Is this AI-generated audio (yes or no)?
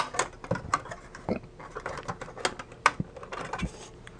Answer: no